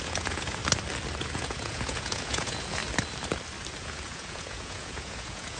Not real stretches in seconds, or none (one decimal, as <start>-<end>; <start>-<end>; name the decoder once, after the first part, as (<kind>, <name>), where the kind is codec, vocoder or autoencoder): 0.0-0.6 (vocoder, Vocos); 1.2-2.8; 3.8-5.6